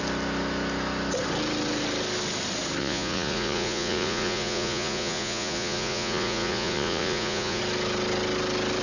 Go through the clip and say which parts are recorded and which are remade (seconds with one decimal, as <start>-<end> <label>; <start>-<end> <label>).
0.0-2.8 recorded; 2.8-7.6 remade; 7.6-8.8 recorded